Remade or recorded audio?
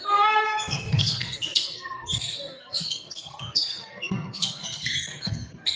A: remade